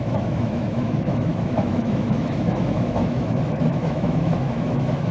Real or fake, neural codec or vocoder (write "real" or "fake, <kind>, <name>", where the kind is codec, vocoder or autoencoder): fake, autoencoder, DAC-VAE